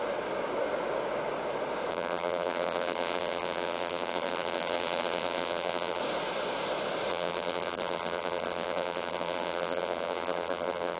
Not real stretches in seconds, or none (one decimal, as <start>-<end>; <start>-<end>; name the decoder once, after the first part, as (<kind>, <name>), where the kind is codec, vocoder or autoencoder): 1.9-6.0 (vocoder, BigVGAN v2); 7.1-11.0